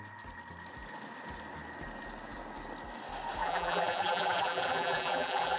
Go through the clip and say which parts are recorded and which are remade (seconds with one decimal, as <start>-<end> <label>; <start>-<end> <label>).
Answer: 0.0-3.4 recorded; 3.4-5.6 remade